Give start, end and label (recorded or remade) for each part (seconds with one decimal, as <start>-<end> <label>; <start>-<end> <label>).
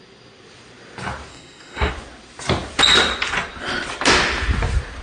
0.0-1.3 recorded; 1.3-1.9 remade; 1.9-5.0 recorded